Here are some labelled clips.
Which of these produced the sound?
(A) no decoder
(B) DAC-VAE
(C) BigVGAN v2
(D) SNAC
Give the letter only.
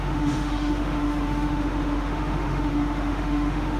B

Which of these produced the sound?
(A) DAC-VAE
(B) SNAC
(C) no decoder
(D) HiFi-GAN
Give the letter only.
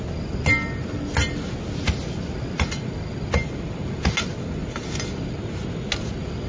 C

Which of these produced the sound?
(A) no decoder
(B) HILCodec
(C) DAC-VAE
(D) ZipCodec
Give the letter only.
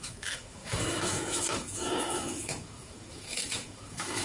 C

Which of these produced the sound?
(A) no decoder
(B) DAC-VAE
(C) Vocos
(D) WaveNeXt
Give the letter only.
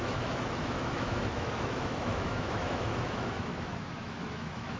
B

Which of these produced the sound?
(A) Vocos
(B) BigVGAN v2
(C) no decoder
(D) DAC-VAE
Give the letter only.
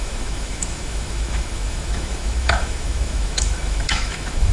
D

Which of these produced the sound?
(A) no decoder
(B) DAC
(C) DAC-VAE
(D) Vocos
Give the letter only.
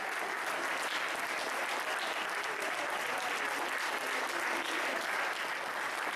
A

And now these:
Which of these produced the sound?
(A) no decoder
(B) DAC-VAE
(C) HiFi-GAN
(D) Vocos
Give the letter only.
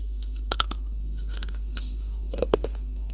B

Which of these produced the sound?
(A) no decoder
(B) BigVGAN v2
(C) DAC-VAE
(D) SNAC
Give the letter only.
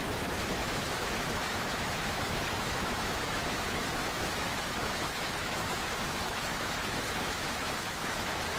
C